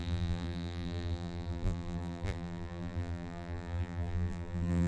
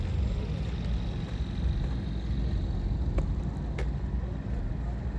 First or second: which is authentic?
second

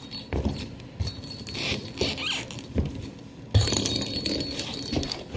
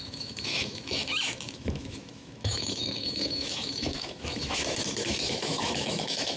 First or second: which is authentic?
first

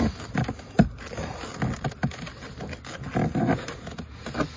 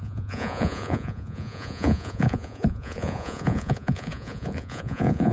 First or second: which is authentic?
first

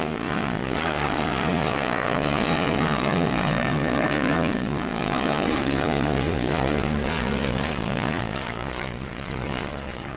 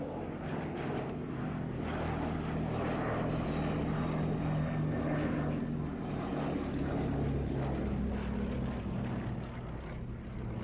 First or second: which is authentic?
second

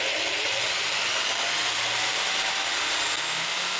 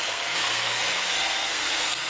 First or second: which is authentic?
first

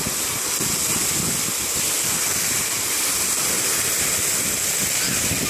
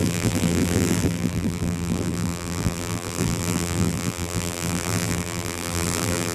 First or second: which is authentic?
first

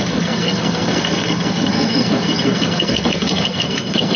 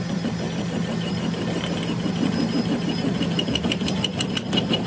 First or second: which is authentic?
second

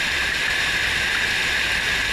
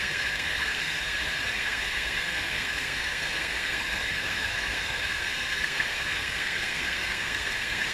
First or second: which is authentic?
first